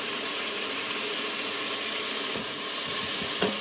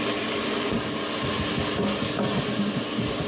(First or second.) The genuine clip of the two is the second